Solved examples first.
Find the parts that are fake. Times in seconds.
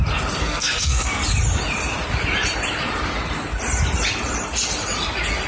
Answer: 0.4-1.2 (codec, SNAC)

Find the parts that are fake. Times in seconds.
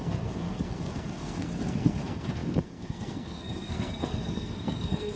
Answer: 0.0-5.2 (codec, SNAC)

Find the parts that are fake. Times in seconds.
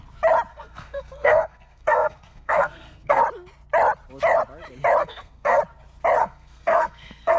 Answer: 0.5-3.2 (codec, SNAC); 5.0-5.6; 6.2-7.4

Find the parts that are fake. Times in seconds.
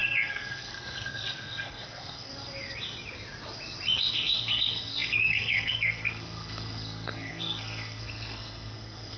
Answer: 0.0-2.3 (codec, SNAC); 4.1-9.2